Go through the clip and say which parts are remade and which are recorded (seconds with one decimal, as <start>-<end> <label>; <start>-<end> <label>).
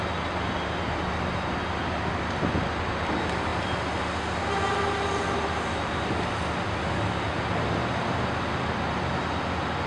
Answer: 0.0-9.9 recorded